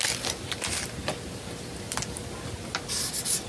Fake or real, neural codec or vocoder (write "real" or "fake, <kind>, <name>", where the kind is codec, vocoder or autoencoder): real